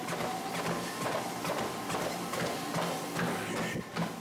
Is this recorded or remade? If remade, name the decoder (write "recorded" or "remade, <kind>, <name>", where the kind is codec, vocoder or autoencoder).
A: recorded